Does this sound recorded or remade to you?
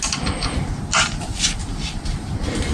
recorded